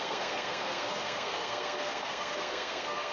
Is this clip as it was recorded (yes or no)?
no